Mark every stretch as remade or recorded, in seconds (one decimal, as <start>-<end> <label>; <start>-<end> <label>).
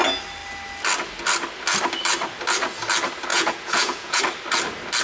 0.0-3.3 recorded; 3.3-4.2 remade; 4.2-5.0 recorded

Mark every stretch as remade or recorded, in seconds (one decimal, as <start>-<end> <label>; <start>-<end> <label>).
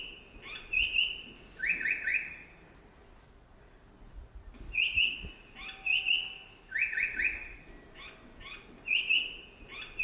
0.0-10.0 recorded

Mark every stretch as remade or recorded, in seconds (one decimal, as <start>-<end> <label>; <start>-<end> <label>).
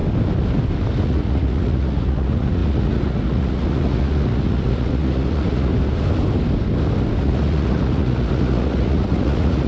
0.0-1.0 recorded; 1.0-5.7 remade; 5.7-7.2 recorded; 7.2-9.7 remade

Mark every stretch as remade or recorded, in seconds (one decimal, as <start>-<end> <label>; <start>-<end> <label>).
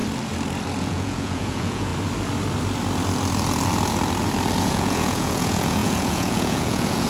0.0-0.8 recorded; 0.8-1.9 remade; 1.9-4.6 recorded; 4.6-7.1 remade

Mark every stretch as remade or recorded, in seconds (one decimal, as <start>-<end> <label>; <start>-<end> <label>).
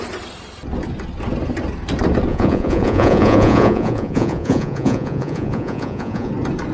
0.0-2.3 recorded; 2.3-6.3 remade; 6.3-6.7 recorded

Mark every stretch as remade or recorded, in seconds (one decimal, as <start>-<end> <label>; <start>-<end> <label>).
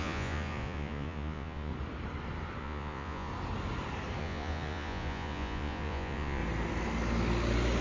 0.0-1.7 remade; 1.7-2.6 recorded; 2.6-3.3 remade; 3.3-4.2 recorded; 4.2-6.4 remade; 6.4-7.8 recorded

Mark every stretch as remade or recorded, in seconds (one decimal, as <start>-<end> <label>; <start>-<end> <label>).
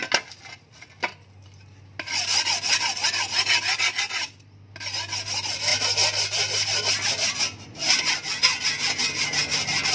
0.0-9.9 recorded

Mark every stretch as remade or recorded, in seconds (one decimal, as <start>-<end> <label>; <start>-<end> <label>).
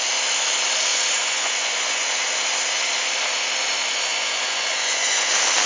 0.0-0.9 recorded; 0.9-2.1 remade; 2.1-4.1 recorded; 4.1-5.3 remade; 5.3-5.7 recorded